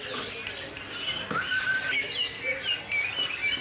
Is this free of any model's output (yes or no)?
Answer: yes